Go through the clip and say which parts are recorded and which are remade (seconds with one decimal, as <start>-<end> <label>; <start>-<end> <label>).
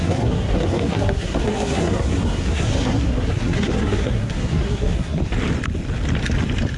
0.0-5.2 remade; 5.2-6.8 recorded